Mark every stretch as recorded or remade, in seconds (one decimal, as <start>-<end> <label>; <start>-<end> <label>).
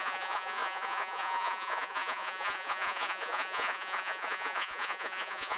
0.0-5.6 remade